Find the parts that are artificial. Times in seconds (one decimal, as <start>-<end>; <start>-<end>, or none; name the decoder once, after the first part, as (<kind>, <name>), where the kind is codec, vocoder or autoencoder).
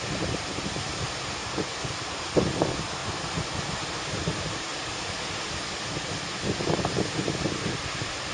0.0-1.4 (vocoder, BigVGAN v2); 2.0-3.0; 6.8-8.3